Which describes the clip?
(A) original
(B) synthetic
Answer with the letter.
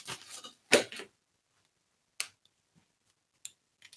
A